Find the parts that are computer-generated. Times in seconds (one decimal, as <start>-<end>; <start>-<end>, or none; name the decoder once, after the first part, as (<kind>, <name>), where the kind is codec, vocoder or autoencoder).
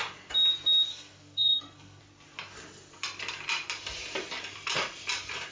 0.9-2.0 (codec, SNAC)